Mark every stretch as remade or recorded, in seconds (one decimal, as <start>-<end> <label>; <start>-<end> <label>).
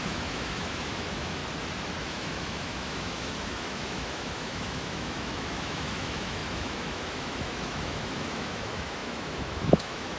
0.0-1.4 remade; 1.4-2.0 recorded; 2.0-10.2 remade